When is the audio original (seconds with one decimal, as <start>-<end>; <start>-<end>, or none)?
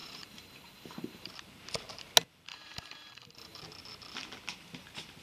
1.3-2.5; 3.6-5.2